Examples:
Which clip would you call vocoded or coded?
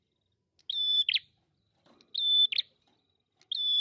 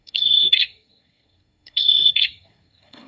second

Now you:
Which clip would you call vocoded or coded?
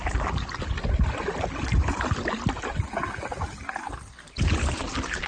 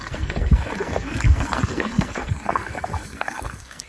second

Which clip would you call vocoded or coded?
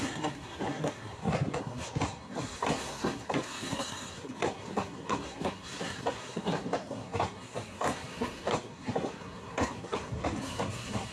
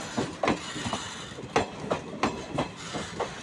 first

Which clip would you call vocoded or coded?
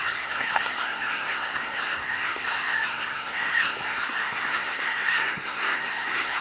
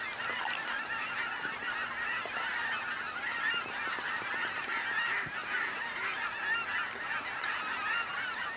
first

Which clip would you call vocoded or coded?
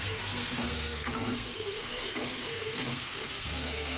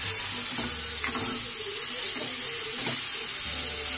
first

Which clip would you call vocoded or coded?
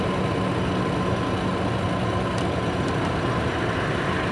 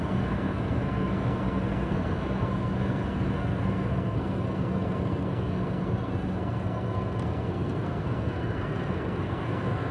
second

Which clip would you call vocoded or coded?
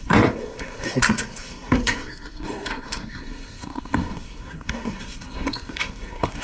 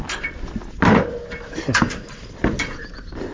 first